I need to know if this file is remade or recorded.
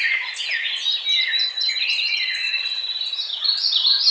recorded